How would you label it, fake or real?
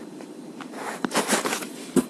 real